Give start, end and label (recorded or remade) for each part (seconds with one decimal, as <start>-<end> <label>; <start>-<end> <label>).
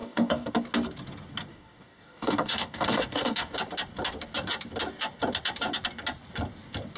0.0-0.5 remade; 0.5-1.5 recorded; 1.5-3.5 remade; 3.5-7.0 recorded